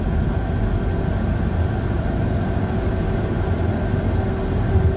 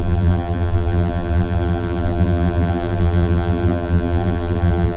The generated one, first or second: second